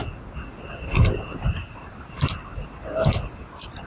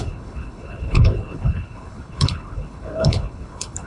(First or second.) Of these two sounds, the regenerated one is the second